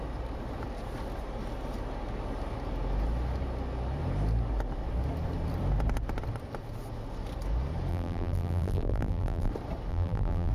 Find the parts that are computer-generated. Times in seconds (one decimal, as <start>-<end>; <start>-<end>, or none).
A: 7.9-9.5; 9.9-10.5